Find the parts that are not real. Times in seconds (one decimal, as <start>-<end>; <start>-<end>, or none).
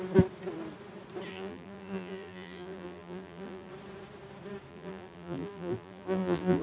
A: 1.3-3.7; 4.7-6.6